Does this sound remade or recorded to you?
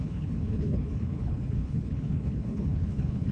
remade